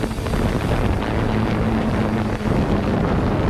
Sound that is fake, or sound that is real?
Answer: real